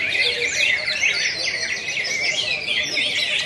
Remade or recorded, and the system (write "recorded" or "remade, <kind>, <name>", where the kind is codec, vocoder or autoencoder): recorded